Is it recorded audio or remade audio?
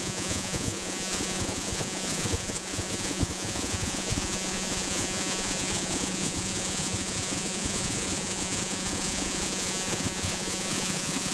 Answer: remade